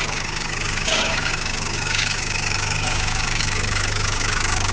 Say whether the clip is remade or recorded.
remade